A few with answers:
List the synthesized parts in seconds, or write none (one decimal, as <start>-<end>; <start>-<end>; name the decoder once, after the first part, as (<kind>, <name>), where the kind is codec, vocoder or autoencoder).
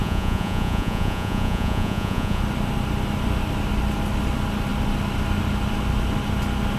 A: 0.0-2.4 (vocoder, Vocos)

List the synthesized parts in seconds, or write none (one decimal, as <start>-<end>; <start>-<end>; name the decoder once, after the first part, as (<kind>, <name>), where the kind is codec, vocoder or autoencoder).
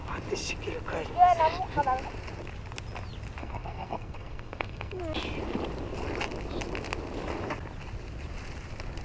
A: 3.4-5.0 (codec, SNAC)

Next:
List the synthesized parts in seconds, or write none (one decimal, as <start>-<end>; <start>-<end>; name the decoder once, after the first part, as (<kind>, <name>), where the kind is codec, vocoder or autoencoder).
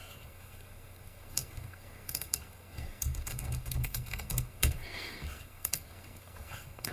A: 0.0-6.9 (codec, SNAC)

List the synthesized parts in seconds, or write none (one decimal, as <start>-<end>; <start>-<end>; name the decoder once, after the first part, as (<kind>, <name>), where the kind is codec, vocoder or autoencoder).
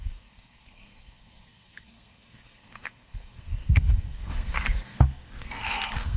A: 0.0-6.2 (codec, SNAC)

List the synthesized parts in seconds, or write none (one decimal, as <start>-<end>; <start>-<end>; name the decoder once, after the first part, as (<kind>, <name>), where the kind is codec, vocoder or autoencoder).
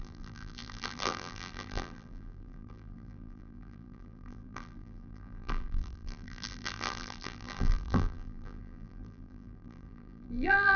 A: 0.0-10.8 (vocoder, BigVGAN v2)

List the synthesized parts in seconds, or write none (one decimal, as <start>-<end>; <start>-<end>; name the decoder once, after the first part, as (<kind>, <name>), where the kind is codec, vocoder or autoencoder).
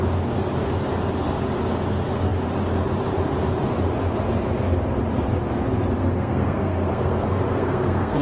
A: 6.0-8.2 (codec, SNAC)